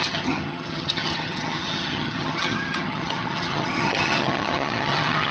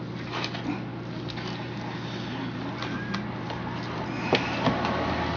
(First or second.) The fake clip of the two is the first